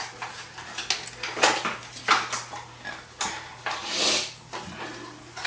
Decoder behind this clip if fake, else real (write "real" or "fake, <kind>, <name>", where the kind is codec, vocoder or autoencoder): real